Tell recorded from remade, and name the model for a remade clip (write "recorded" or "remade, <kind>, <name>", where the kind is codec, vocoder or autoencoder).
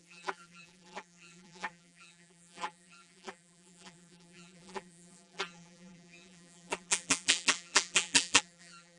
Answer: remade, vocoder, BigVGAN v2